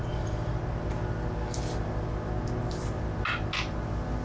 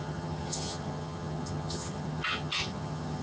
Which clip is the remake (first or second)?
second